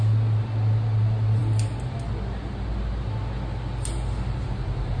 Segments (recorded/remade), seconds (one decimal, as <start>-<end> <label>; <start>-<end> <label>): 0.0-5.0 recorded